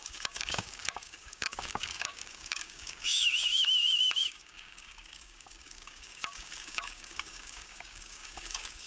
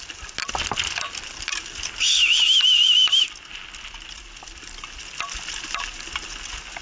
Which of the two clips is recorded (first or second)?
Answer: second